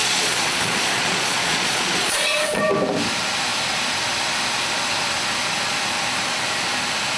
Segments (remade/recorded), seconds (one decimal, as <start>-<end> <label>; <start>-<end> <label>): 0.0-2.6 remade; 2.6-7.2 recorded

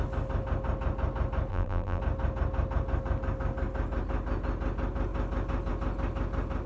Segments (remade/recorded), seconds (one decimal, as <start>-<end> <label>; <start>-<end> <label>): 0.0-1.5 recorded; 1.5-2.0 remade; 2.0-6.7 recorded

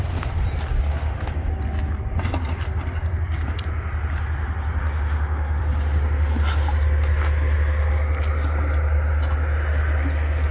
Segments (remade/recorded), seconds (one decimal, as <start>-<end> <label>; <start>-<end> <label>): 0.0-0.9 recorded; 0.9-1.5 remade; 1.5-4.8 recorded; 4.8-5.6 remade; 5.6-10.5 recorded

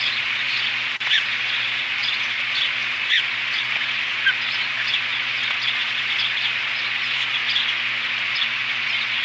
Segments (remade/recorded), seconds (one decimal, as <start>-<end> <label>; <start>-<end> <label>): 0.0-7.4 remade; 7.4-8.0 recorded; 8.0-9.2 remade